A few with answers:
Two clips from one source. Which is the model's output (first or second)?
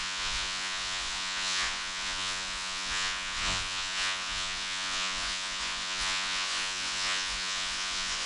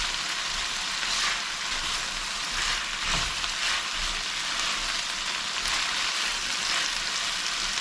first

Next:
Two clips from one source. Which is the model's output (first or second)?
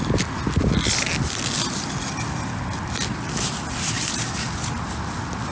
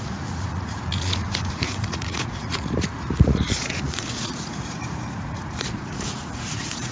second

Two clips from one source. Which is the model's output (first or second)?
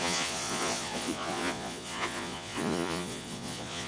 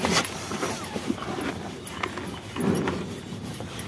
first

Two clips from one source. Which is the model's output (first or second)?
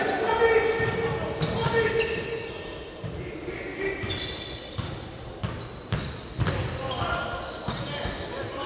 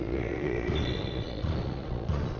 second